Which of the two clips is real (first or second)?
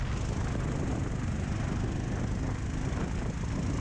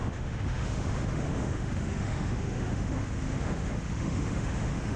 first